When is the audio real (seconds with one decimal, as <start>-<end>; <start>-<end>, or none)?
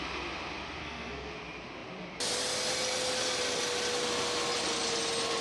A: 0.0-0.8; 1.3-5.4